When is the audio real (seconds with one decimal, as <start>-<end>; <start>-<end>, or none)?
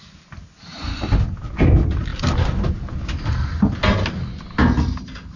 0.0-5.4